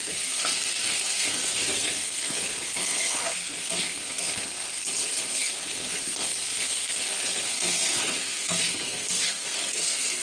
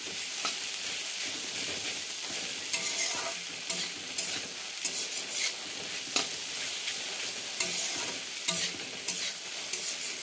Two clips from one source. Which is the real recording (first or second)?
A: second